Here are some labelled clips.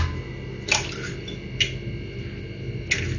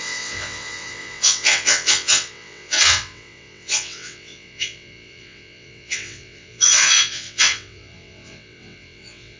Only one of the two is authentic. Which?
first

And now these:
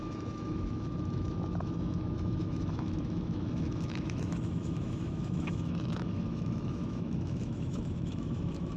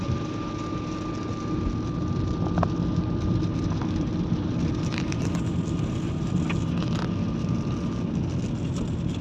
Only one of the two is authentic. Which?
second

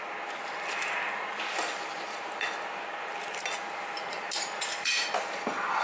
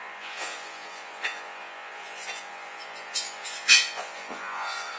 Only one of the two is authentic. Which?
first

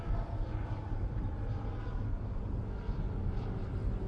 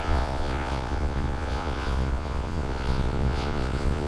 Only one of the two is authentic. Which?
first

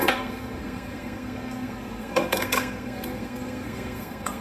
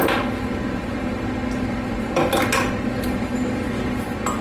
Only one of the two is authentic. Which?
second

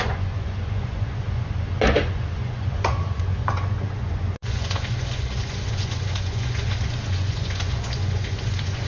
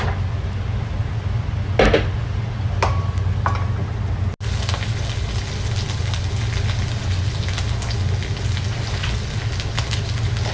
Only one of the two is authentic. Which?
second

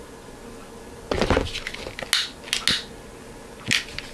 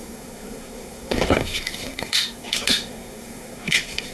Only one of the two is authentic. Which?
first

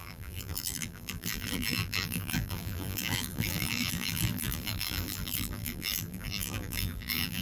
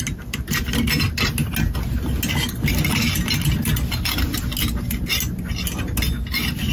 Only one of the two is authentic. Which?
second